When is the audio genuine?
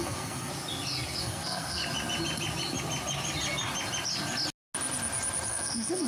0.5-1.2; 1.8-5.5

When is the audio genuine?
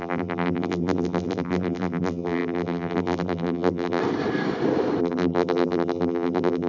4.0-5.0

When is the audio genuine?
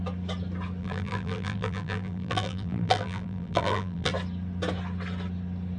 0.0-0.8; 4.1-5.8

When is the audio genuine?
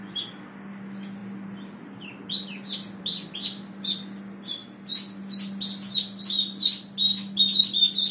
0.0-8.1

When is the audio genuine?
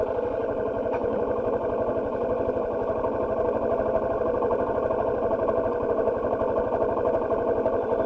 0.0-8.1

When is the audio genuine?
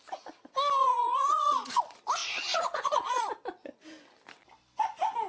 0.0-0.8; 1.8-2.2; 3.3-5.3